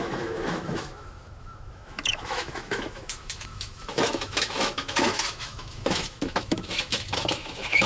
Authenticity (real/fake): fake